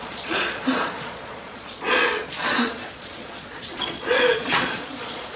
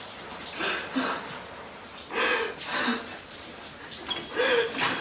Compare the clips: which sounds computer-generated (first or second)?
first